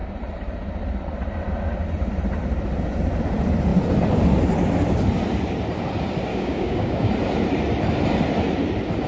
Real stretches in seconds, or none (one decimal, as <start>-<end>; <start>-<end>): 0.0-6.3; 7.1-9.1